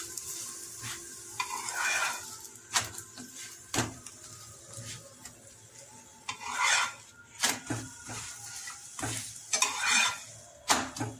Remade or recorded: recorded